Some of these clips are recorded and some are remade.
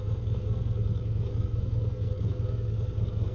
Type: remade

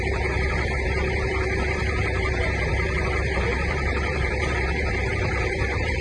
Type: remade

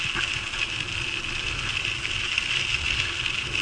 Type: recorded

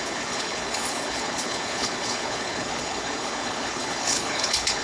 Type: remade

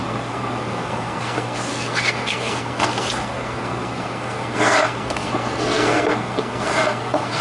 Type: remade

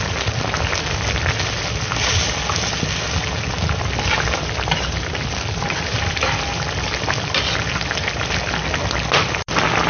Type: recorded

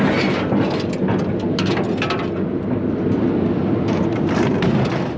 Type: recorded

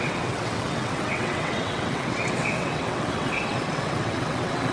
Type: remade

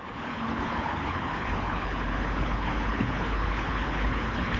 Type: remade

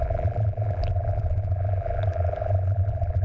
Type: remade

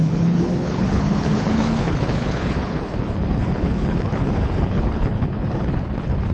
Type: remade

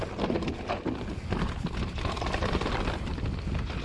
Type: recorded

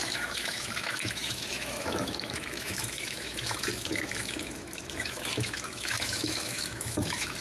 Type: remade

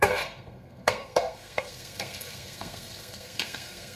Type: remade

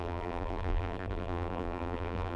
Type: remade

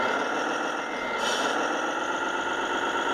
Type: recorded